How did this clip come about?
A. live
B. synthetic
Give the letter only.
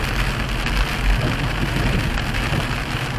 A